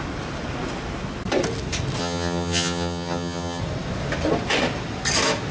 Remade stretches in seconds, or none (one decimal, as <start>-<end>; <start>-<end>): 2.0-3.6